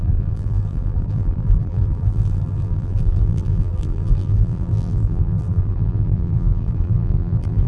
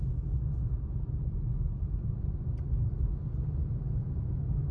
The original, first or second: second